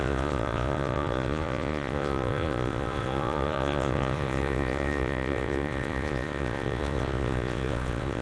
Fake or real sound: fake